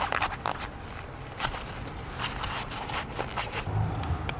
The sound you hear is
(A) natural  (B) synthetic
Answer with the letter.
A